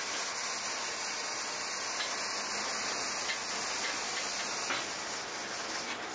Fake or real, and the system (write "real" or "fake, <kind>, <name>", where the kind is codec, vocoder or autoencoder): real